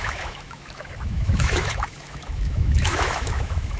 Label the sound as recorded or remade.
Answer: remade